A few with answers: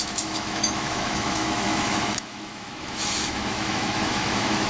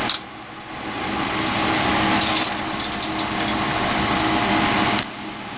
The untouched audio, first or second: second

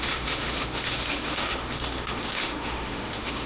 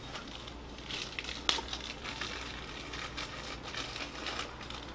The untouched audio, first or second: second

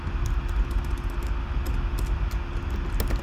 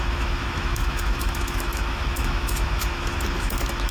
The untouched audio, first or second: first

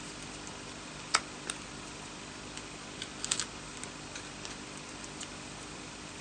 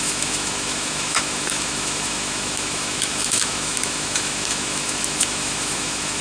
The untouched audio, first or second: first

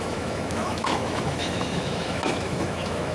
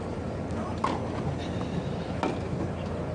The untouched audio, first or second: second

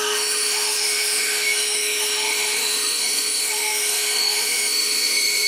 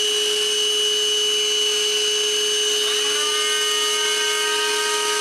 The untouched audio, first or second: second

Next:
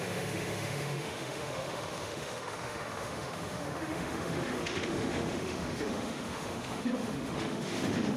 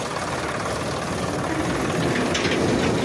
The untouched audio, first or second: second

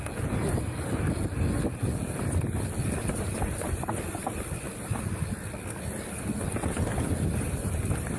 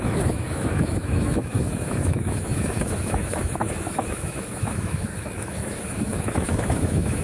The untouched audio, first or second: first